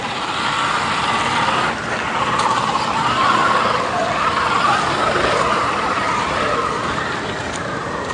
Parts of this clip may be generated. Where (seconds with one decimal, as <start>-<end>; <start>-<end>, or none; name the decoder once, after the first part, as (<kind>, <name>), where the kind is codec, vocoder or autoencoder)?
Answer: none